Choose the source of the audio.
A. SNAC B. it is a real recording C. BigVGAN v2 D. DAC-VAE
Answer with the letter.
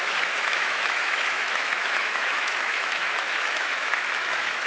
D